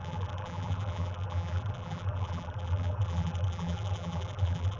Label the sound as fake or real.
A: fake